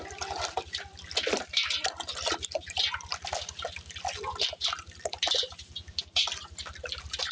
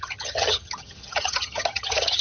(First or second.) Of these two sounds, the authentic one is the first